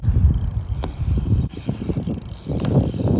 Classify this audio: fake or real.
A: fake